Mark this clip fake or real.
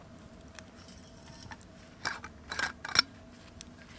real